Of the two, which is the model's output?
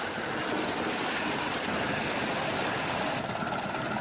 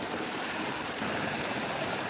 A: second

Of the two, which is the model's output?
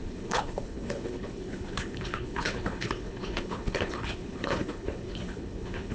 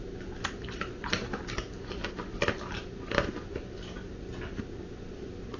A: first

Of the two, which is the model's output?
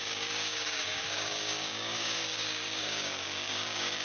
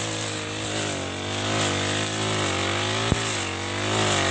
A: first